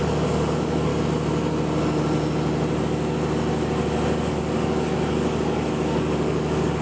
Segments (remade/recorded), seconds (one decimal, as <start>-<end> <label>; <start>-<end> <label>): 0.0-0.9 remade; 0.9-4.3 recorded; 4.3-6.8 remade

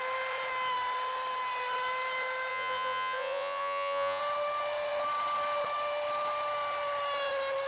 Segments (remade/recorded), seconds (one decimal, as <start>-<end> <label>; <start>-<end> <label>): 0.0-2.5 recorded; 2.5-4.2 remade; 4.2-7.7 recorded

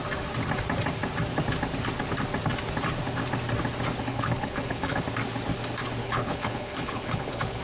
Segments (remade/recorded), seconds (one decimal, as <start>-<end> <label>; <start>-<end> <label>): 0.0-4.1 recorded; 4.1-5.0 remade; 5.0-6.0 recorded; 6.0-7.6 remade

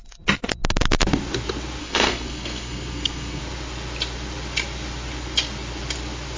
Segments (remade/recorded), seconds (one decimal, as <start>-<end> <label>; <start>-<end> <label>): 0.0-1.8 recorded; 1.8-3.4 remade; 3.4-6.4 recorded

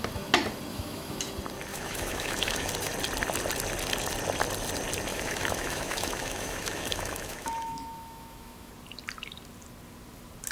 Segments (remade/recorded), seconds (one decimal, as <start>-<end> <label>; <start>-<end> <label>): 0.0-0.7 recorded; 0.7-1.2 remade; 1.2-1.7 recorded; 1.7-2.7 remade; 2.7-5.1 recorded; 5.1-8.7 remade; 8.7-10.5 recorded